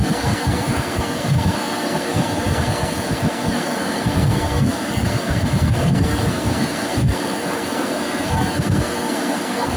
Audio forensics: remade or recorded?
remade